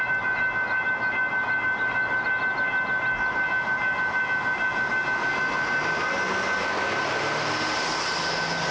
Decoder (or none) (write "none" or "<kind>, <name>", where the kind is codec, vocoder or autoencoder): none